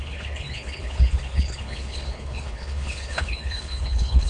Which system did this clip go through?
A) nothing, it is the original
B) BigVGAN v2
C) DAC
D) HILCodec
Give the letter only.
D